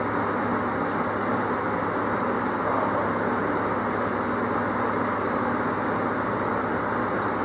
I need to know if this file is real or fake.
real